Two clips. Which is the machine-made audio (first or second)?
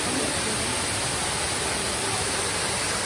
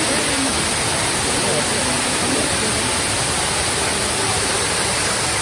second